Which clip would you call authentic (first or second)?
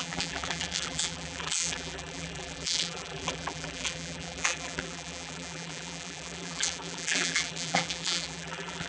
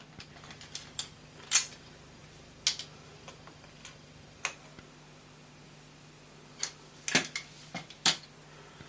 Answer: second